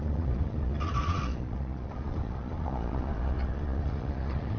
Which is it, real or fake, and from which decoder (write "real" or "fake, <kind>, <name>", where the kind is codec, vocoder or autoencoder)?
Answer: fake, vocoder, Vocos